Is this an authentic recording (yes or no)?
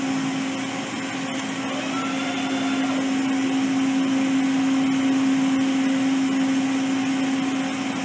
yes